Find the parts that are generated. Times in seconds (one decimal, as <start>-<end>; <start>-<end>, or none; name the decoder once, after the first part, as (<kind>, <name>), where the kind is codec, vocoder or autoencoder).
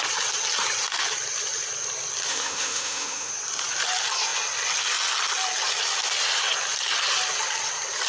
2.3-3.3 (autoencoder, DAC-VAE)